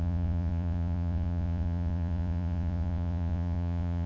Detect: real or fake fake